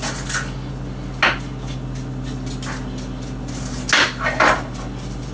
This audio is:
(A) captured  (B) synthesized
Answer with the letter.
A